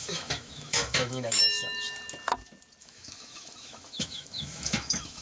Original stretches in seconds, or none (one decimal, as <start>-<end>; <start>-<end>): 1.4-2.8